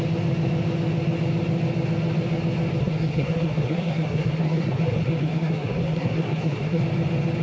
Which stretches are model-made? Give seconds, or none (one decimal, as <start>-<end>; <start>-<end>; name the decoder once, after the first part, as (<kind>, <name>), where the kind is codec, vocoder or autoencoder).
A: 2.8-6.8 (codec, SNAC)